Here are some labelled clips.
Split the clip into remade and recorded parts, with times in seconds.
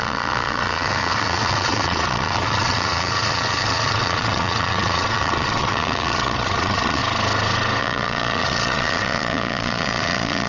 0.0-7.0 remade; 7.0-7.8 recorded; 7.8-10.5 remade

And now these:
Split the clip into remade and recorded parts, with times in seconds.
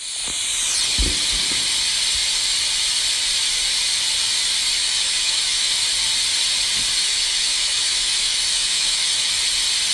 0.0-4.8 recorded; 4.8-5.7 remade; 5.7-7.0 recorded; 7.0-9.3 remade; 9.3-9.9 recorded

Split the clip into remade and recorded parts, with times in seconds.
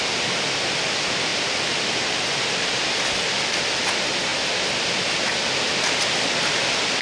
0.0-7.0 recorded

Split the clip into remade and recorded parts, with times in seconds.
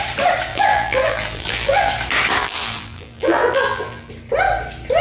0.0-0.5 recorded; 0.5-1.9 remade; 1.9-2.4 recorded; 2.4-4.1 remade; 4.1-5.0 recorded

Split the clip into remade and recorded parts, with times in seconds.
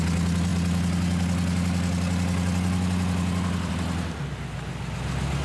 0.0-5.4 recorded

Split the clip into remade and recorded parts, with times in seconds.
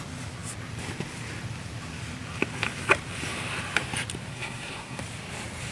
0.0-4.3 recorded; 4.3-5.0 remade; 5.0-5.7 recorded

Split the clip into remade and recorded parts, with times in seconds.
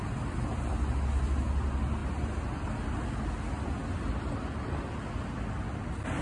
0.0-6.2 recorded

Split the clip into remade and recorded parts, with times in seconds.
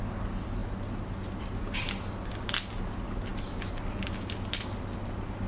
0.0-5.5 recorded